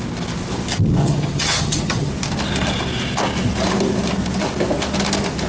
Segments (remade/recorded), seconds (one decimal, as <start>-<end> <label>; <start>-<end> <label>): 0.0-1.0 recorded; 1.0-2.1 remade; 2.1-5.5 recorded